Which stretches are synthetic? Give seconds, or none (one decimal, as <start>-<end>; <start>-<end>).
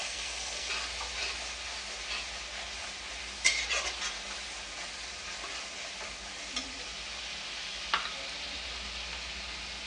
0.0-0.7